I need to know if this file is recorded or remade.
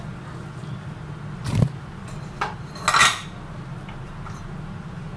recorded